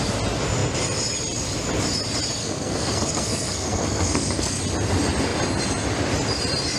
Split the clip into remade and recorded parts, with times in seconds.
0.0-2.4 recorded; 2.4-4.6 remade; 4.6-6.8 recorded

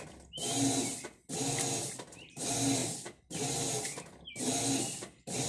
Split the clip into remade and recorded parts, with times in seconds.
0.0-5.5 recorded